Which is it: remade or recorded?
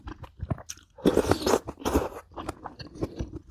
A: recorded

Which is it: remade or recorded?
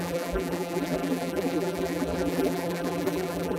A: remade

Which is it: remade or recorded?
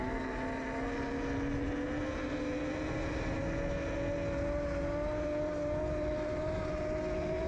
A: recorded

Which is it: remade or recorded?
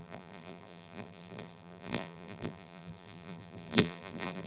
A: remade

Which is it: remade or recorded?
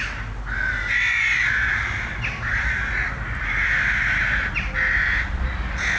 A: recorded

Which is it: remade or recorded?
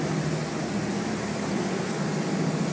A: recorded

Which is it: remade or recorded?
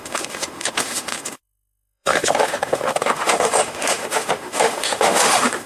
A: remade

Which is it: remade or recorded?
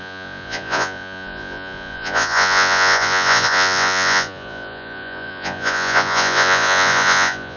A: remade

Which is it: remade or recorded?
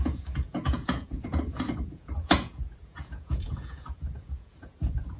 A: remade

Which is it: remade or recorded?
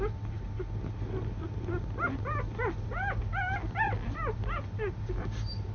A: recorded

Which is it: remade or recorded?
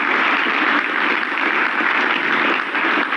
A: remade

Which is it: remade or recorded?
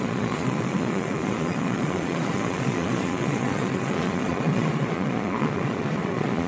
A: remade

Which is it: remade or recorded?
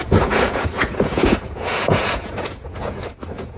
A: remade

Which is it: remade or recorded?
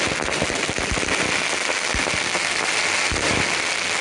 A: recorded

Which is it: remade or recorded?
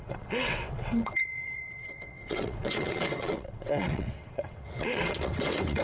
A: remade